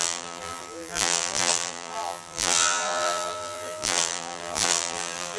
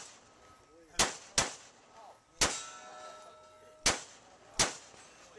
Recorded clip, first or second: second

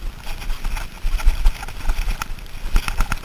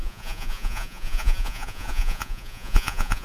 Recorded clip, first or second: first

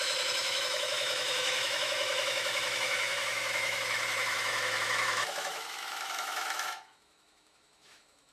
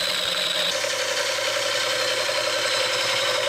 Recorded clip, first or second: second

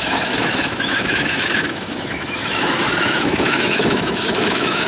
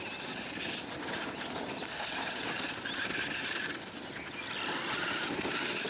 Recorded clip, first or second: second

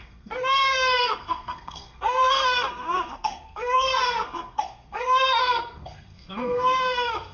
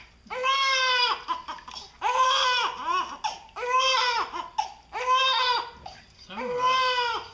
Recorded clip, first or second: second